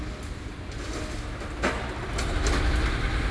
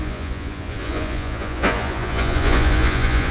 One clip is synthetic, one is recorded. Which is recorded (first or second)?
first